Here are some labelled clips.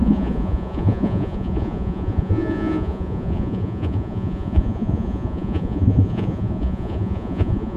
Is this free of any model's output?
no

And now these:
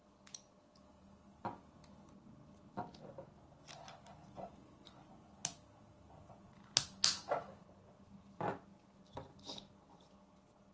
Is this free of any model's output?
yes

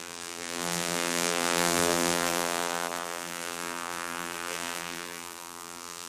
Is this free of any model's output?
no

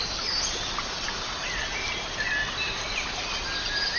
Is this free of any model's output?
yes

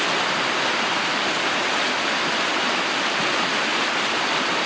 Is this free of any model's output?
yes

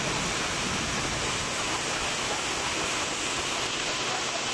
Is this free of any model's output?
yes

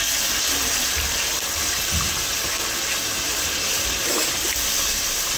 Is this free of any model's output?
yes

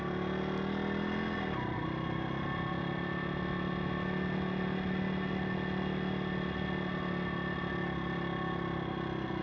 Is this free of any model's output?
yes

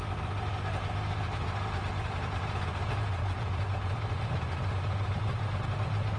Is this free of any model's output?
yes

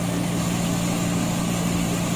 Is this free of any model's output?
yes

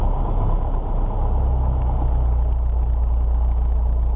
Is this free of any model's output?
yes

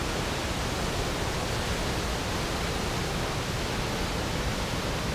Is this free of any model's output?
yes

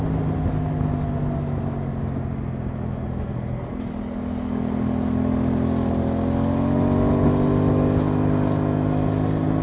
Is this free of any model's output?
yes